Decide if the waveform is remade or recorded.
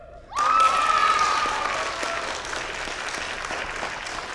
recorded